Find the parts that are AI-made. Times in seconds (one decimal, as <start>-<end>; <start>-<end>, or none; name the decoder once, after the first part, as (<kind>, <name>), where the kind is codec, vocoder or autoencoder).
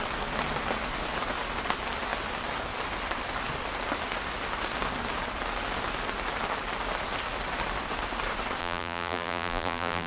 8.6-10.1 (vocoder, BigVGAN v2)